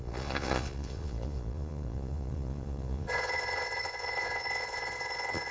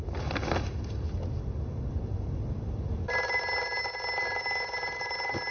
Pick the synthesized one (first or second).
first